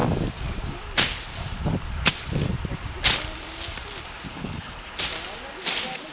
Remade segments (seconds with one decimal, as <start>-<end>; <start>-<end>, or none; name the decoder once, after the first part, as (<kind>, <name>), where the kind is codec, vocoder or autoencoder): 4.3-4.9 (codec, HILCodec)